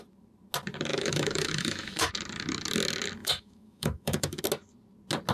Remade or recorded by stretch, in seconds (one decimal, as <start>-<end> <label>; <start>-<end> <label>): 0.0-0.9 recorded; 0.9-2.1 remade; 2.1-3.2 recorded; 3.2-4.4 remade; 4.4-5.3 recorded